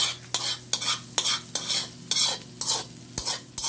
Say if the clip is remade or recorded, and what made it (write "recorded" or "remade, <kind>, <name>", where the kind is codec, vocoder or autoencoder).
recorded